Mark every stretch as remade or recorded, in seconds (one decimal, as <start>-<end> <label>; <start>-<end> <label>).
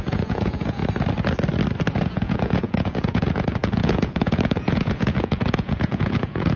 0.0-0.8 remade; 0.8-2.0 recorded; 2.0-6.6 remade